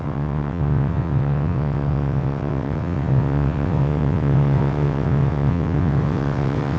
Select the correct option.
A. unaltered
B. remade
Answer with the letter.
B